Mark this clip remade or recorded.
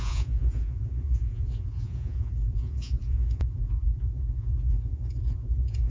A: remade